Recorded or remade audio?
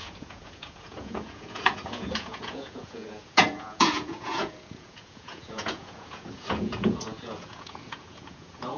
remade